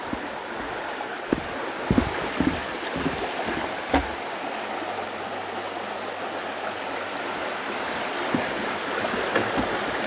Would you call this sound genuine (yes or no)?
yes